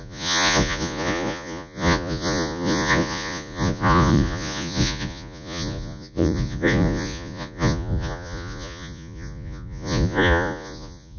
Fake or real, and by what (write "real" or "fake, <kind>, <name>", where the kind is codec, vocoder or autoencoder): fake, vocoder, Vocos